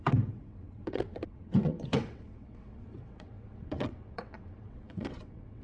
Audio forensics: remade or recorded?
remade